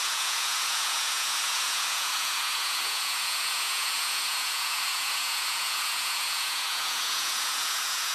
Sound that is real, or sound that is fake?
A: fake